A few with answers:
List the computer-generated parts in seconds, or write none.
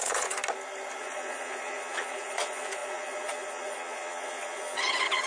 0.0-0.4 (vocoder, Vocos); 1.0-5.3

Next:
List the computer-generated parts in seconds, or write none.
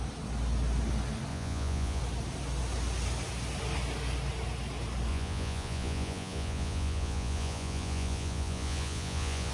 1.3-2.0 (vocoder, Vocos); 5.1-9.5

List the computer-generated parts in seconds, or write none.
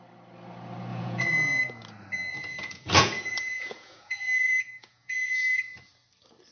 0.9-1.6 (vocoder, Vocos); 2.3-5.8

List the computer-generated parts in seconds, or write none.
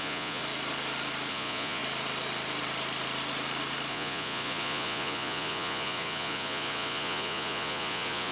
0.0-0.4 (vocoder, Vocos); 1.3-1.8; 3.9-8.3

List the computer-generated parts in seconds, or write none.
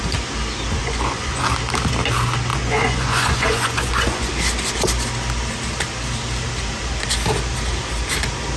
0.8-1.4 (vocoder, Vocos); 2.5-4.3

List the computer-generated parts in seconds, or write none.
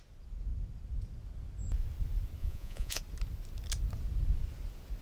2.4-3.0 (vocoder, Vocos)